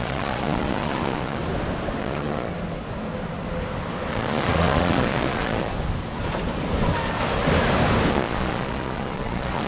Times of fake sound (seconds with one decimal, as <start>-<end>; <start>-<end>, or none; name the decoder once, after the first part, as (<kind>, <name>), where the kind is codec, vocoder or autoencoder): 0.0-1.4 (vocoder, Vocos); 2.0-2.5; 4.1-5.7; 8.1-9.7